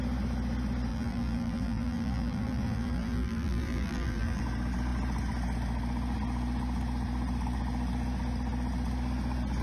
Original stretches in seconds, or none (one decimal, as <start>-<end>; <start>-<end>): 0.0-0.9; 4.4-9.6